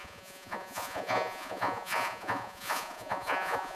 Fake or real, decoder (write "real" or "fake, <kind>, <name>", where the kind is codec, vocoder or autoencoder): fake, vocoder, Vocos